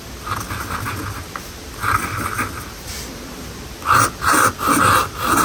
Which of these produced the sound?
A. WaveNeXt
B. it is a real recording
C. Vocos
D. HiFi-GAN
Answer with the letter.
B